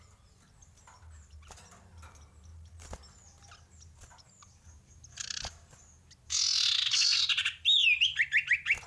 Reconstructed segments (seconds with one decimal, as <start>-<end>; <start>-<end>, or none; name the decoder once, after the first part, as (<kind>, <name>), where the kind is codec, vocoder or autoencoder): none